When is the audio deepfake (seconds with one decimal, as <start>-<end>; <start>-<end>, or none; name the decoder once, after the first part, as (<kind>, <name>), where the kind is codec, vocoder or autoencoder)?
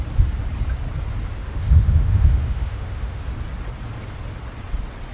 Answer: 1.4-3.2 (autoencoder, DAC-VAE)